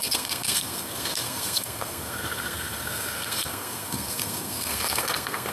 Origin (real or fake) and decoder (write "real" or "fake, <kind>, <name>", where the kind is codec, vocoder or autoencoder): fake, codec, SNAC